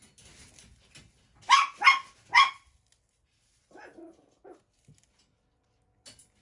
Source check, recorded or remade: recorded